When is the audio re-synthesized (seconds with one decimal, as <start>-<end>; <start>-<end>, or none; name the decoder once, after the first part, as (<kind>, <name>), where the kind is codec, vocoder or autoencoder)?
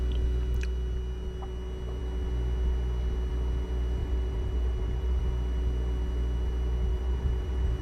4.0-5.2 (vocoder, BigVGAN v2); 6.9-7.8